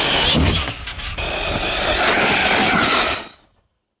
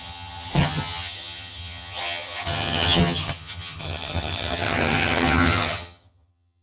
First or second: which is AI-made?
second